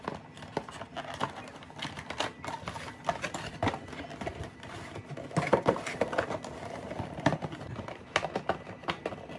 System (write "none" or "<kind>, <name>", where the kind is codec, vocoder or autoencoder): none